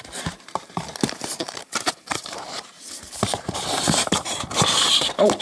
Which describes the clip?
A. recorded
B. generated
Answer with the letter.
B